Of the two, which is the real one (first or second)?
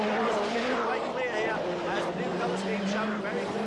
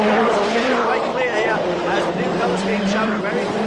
first